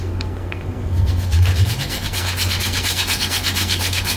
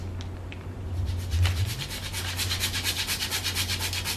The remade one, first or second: first